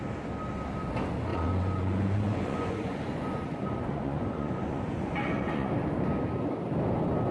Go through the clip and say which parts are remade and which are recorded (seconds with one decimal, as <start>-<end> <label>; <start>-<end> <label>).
0.0-1.3 recorded; 1.3-5.7 remade; 5.7-7.3 recorded